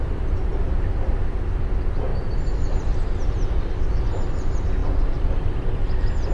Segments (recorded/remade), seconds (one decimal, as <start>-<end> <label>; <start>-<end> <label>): 0.0-6.3 recorded